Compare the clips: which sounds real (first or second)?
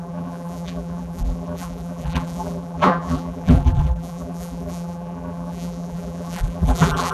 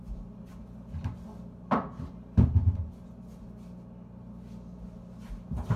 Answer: second